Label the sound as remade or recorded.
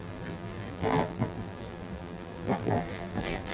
remade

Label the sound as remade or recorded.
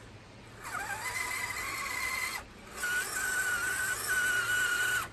recorded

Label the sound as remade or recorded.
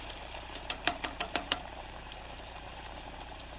remade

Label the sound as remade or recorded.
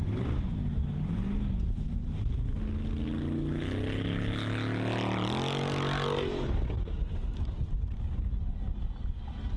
recorded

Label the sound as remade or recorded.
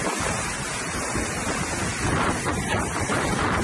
recorded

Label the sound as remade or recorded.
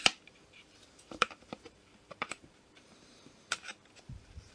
remade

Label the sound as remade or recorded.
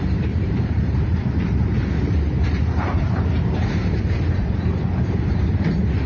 remade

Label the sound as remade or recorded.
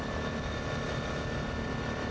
recorded